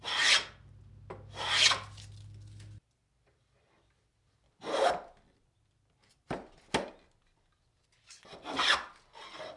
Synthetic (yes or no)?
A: no